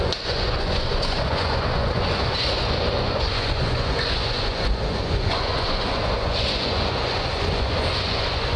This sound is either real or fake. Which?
fake